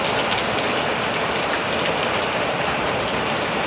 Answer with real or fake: real